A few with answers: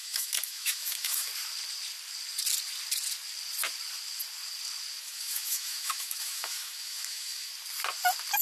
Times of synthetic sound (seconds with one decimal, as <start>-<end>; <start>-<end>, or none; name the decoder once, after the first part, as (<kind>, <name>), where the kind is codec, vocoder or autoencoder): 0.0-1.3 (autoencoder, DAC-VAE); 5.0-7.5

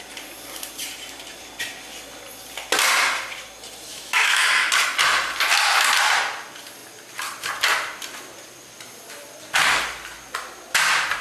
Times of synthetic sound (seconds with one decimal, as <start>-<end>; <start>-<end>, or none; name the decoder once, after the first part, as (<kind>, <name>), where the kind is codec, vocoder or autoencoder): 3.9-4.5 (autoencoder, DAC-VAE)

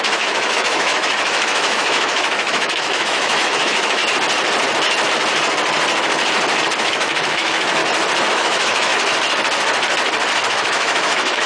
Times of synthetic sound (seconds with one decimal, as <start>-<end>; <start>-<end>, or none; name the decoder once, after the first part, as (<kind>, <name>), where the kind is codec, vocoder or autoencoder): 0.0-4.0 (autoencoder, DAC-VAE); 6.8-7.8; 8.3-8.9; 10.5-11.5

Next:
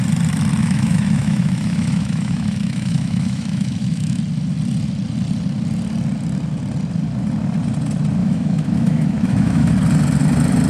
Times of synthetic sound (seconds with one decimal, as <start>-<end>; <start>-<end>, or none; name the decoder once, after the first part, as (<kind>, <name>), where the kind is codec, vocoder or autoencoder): 0.6-4.2 (autoencoder, DAC-VAE); 8.2-9.7